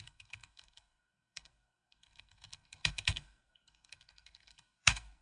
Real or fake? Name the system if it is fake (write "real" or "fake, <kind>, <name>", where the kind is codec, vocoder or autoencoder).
fake, codec, SNAC